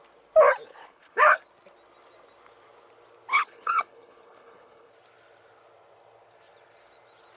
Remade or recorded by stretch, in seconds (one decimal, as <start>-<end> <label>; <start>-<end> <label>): 0.0-0.8 recorded; 0.8-1.4 remade; 1.4-3.3 recorded; 3.3-4.9 remade; 4.9-7.4 recorded